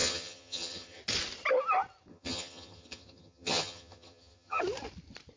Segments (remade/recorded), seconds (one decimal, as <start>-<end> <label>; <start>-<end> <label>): 0.0-1.0 remade; 1.0-2.1 recorded; 2.1-4.6 remade; 4.6-5.4 recorded